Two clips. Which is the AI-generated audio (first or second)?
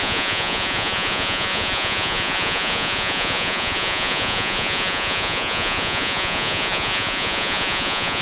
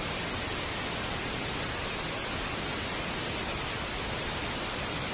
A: first